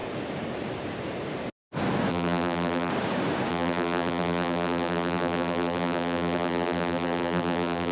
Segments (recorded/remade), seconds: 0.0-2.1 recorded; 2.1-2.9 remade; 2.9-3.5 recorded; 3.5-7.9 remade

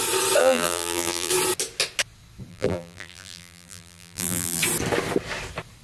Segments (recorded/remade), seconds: 0.0-0.4 recorded; 0.4-1.3 remade; 1.3-2.5 recorded; 2.5-4.6 remade; 4.6-5.8 recorded

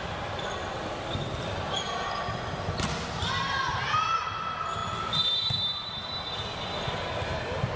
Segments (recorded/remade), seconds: 0.0-3.7 recorded; 3.7-4.3 remade; 4.3-7.8 recorded

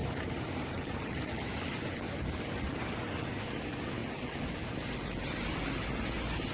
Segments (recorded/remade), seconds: 0.0-1.9 remade; 1.9-6.5 recorded

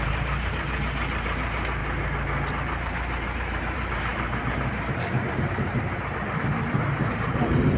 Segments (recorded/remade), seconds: 0.0-1.8 remade; 1.8-2.5 recorded; 2.5-7.8 remade

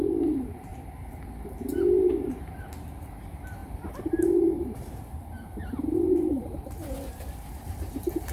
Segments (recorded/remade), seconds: 0.0-0.7 remade; 0.7-2.3 recorded; 2.3-8.3 remade